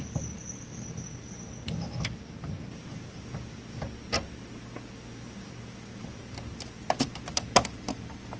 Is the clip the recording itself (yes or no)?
yes